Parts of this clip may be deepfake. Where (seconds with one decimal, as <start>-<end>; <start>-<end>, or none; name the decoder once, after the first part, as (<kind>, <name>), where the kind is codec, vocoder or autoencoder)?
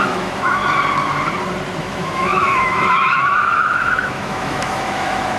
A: 0.0-0.6 (autoencoder, DAC-VAE); 1.8-5.4